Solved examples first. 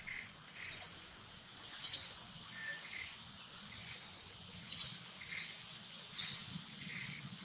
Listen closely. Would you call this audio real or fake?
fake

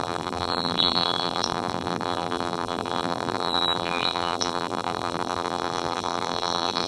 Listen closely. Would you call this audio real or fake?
fake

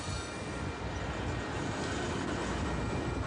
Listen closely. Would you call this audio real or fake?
real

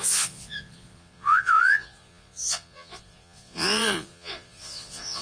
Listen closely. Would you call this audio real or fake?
fake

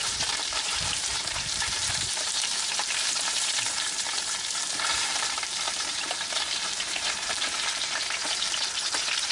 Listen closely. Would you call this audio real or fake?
fake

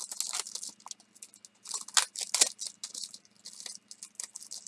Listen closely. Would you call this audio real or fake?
real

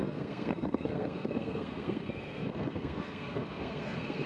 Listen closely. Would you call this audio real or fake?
fake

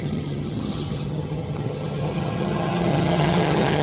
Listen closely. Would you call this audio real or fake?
fake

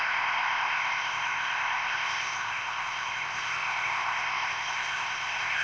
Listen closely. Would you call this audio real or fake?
fake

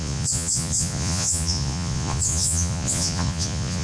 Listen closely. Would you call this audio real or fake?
fake